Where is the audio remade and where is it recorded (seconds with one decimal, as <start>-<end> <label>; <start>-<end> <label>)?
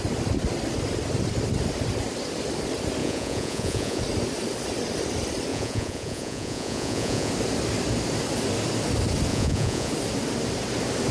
0.0-3.0 recorded; 3.0-4.0 remade; 4.0-5.5 recorded; 5.5-7.3 remade; 7.3-9.3 recorded; 9.3-9.9 remade; 9.9-11.1 recorded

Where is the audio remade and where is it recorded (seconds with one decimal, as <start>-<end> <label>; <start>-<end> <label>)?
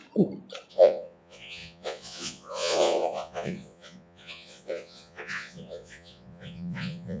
0.0-0.7 recorded; 0.7-7.2 remade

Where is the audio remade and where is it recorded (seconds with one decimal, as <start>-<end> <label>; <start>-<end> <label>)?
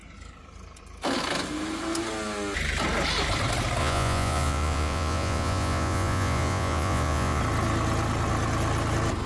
0.0-3.8 recorded; 3.8-7.4 remade; 7.4-9.3 recorded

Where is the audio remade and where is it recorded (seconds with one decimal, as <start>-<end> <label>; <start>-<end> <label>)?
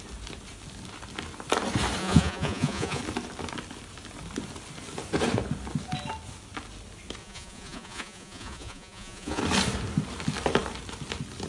0.0-2.0 recorded; 2.0-3.0 remade; 3.0-7.2 recorded; 7.2-9.4 remade; 9.4-11.5 recorded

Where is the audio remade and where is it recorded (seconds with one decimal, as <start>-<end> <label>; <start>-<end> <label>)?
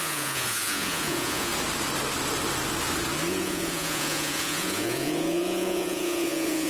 0.0-1.5 remade; 1.5-3.3 recorded; 3.3-6.7 remade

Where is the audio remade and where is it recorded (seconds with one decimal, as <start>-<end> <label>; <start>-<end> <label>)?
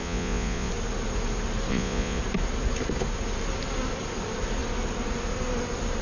0.0-0.7 remade; 0.7-1.7 recorded; 1.7-2.2 remade; 2.2-6.0 recorded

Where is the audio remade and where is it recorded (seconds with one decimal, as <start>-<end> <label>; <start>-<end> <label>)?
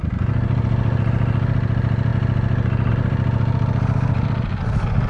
0.0-5.1 recorded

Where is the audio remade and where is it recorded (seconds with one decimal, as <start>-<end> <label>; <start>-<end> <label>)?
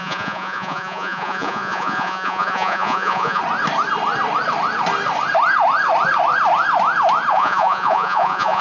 0.0-3.4 remade; 3.4-7.3 recorded; 7.3-8.6 remade